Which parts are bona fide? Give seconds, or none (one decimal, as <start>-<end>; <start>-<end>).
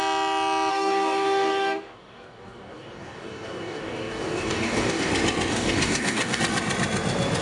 0.0-0.7; 5.1-5.5; 6.4-7.4